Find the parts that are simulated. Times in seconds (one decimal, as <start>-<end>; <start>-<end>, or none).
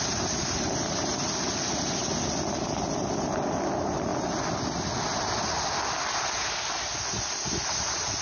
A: none